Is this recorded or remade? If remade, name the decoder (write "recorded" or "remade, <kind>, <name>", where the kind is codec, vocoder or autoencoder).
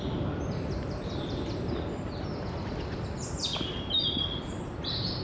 recorded